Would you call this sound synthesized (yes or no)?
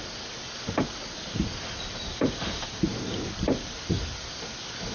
no